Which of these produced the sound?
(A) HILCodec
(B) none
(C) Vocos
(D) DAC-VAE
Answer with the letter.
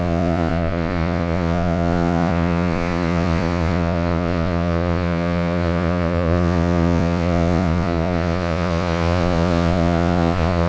C